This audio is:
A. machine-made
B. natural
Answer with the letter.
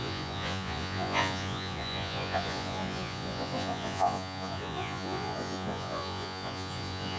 A